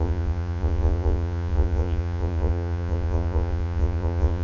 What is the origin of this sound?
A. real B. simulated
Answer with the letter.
B